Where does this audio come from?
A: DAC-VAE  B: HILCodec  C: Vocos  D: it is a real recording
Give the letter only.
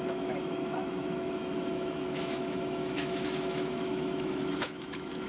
A